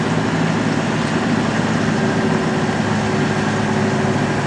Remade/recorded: recorded